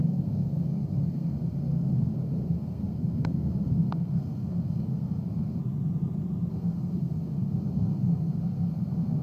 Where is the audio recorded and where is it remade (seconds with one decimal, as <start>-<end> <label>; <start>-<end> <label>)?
0.0-5.6 remade; 5.6-6.5 recorded; 6.5-9.2 remade